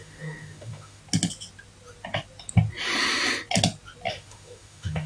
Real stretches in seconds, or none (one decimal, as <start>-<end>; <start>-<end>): 1.0-4.1